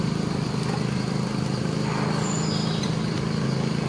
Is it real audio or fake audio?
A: real